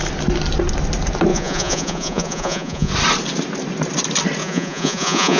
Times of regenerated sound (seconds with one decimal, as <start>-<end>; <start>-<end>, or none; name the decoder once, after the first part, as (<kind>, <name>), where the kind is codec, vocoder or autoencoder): 1.3-2.9 (vocoder, Vocos); 4.4-5.4